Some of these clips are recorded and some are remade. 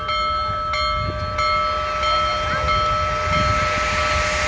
recorded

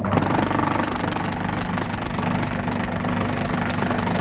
recorded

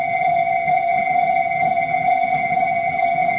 remade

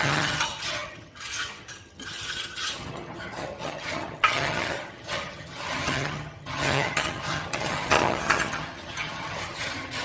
remade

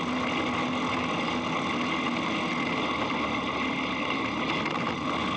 recorded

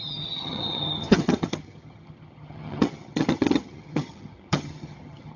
remade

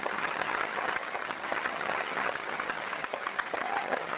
remade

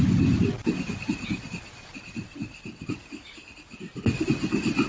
recorded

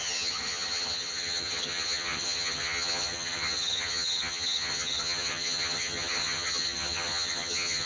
remade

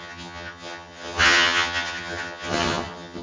remade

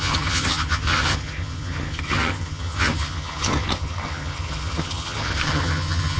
remade